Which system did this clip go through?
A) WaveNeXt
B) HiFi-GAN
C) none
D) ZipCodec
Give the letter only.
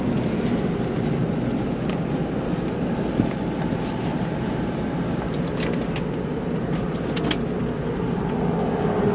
C